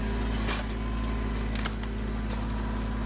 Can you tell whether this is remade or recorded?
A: recorded